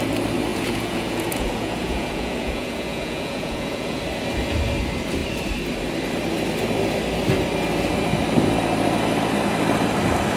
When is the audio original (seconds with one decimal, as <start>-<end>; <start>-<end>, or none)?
0.0-0.5; 4.0-10.4